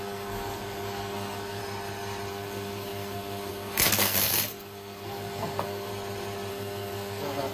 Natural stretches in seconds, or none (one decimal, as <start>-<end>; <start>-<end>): 1.6-2.3; 5.9-6.5